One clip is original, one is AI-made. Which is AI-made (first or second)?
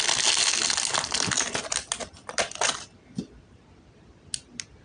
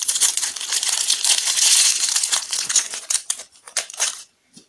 second